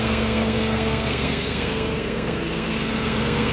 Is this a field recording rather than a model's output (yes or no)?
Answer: no